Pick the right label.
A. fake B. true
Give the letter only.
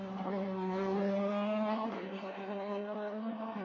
A